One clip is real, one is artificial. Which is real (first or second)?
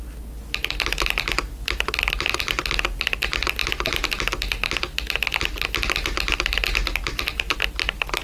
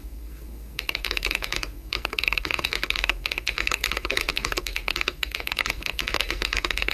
first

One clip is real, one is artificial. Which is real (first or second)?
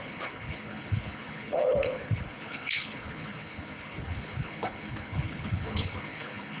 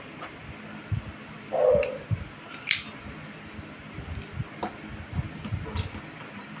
second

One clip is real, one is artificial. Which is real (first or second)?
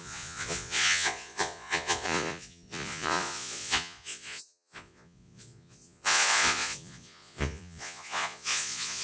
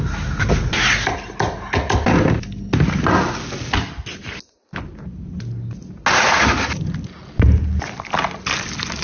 second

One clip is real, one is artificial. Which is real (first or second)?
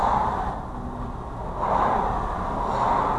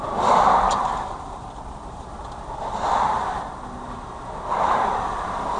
first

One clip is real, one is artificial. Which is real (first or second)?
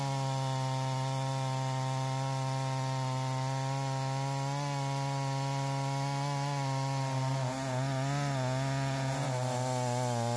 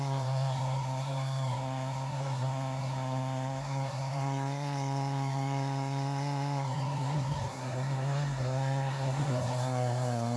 first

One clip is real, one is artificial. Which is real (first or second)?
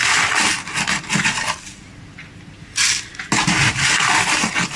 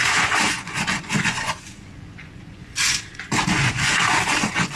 first